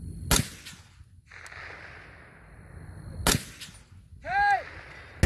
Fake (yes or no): no